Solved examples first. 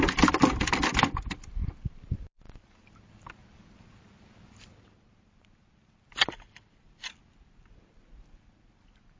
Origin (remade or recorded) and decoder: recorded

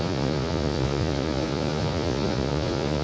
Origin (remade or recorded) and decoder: remade, vocoder, Vocos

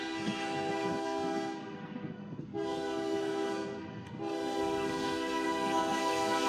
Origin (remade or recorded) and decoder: remade, codec, SNAC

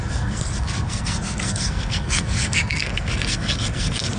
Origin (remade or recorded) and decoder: remade, codec, SNAC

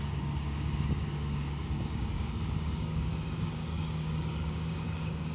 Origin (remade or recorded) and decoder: remade, codec, DAC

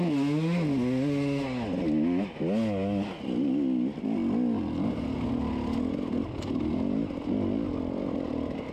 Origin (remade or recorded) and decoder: recorded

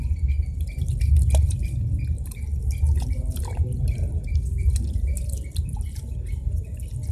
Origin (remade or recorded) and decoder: recorded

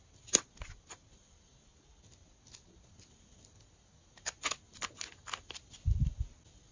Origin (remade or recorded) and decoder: recorded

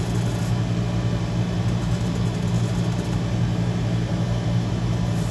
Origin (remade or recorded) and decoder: recorded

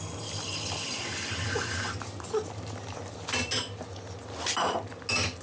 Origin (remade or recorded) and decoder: recorded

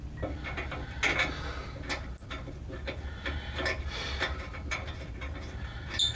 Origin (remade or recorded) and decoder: recorded